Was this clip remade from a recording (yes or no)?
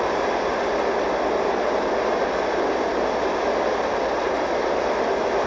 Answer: no